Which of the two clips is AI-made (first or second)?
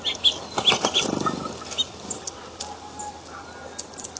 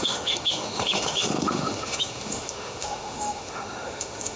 second